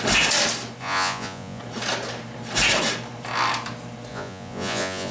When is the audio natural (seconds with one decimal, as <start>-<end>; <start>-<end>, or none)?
0.0-0.8; 1.6-4.1